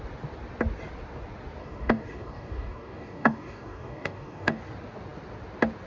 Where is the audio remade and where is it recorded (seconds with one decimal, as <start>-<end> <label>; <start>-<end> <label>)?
0.0-1.6 recorded; 1.6-4.6 remade; 4.6-5.9 recorded

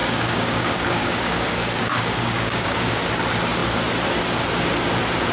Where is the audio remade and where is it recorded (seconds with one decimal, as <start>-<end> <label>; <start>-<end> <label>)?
0.0-2.9 remade; 2.9-5.3 recorded

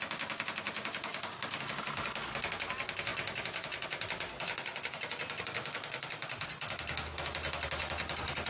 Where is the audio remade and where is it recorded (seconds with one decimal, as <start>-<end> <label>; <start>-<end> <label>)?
0.0-8.5 recorded

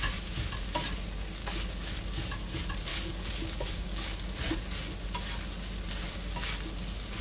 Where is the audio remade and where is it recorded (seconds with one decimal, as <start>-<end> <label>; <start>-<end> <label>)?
0.0-1.4 recorded; 1.4-2.0 remade; 2.0-2.9 recorded; 2.9-4.4 remade; 4.4-7.2 recorded

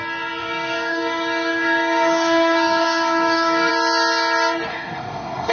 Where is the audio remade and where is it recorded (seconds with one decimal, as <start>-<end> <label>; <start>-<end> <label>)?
0.0-0.4 recorded; 0.4-3.7 remade; 3.7-4.7 recorded; 4.7-5.5 remade

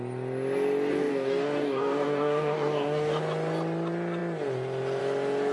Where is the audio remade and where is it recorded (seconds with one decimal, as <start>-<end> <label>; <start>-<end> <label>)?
0.0-0.9 recorded; 0.9-3.2 remade; 3.2-5.5 recorded